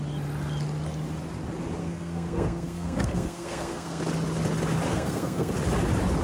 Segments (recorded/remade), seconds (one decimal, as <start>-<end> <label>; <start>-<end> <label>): 0.0-1.8 recorded; 1.8-4.0 remade; 4.0-4.9 recorded; 4.9-5.5 remade; 5.5-6.2 recorded